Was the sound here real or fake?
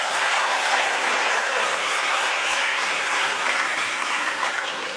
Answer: fake